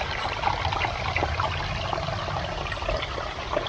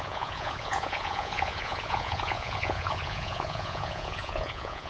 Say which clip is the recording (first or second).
first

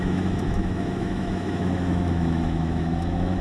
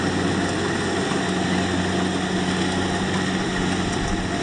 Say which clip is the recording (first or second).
second